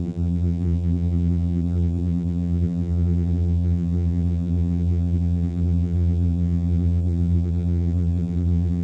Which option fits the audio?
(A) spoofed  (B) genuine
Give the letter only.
A